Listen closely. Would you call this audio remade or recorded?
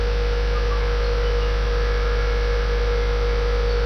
recorded